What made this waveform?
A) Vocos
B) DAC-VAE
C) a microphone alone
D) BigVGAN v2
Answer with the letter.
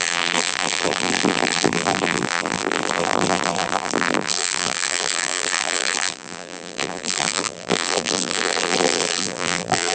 D